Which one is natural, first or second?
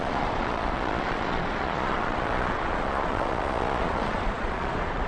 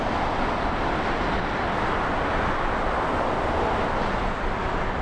second